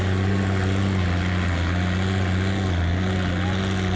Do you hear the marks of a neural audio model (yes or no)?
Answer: no